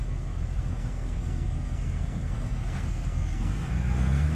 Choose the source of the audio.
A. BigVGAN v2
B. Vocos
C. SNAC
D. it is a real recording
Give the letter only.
C